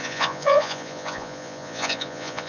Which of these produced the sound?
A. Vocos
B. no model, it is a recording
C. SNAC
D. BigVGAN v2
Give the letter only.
A